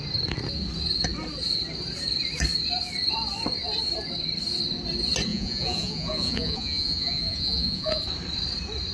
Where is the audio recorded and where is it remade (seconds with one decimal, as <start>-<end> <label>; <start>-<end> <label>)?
0.0-5.3 recorded; 5.3-8.0 remade; 8.0-8.9 recorded